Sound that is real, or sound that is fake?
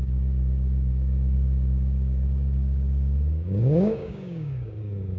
fake